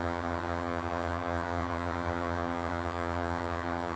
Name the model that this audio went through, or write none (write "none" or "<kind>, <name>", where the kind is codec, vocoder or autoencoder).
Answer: vocoder, HiFi-GAN